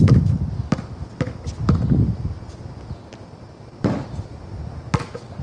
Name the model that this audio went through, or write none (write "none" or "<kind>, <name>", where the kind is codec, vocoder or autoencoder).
none